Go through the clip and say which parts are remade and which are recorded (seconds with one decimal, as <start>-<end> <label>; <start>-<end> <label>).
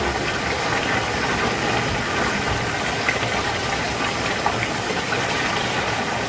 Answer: 0.0-6.3 recorded